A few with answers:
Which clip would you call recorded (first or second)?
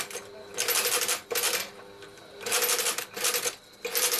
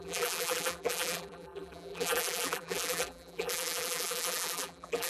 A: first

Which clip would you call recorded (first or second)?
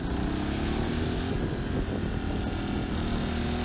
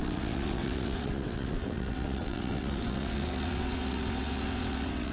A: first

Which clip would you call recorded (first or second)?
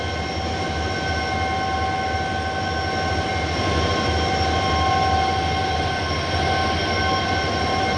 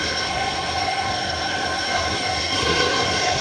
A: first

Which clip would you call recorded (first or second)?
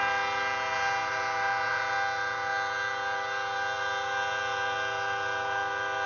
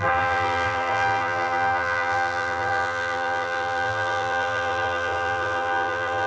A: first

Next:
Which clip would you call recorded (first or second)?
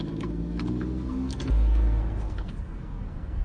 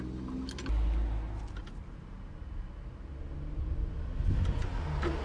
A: second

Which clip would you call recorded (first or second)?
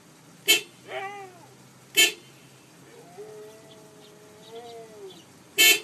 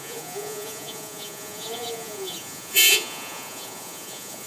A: first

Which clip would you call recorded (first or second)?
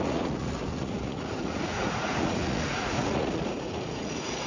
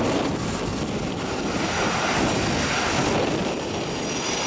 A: second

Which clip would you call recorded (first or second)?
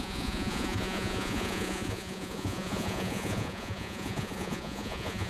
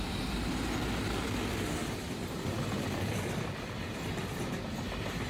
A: second